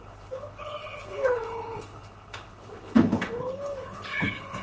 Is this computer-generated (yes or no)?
yes